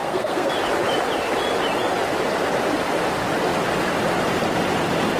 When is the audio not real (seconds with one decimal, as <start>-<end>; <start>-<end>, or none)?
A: 0.0-0.5